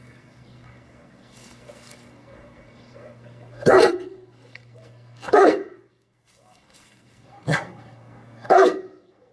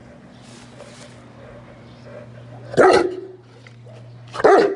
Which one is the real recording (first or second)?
second